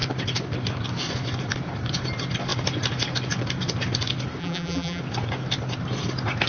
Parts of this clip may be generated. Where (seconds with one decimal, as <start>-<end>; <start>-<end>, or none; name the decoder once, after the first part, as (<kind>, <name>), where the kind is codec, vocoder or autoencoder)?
4.4-5.0 (vocoder, BigVGAN v2)